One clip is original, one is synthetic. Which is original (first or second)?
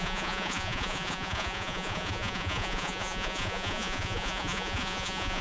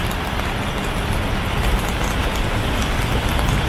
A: second